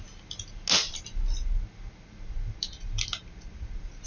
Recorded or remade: recorded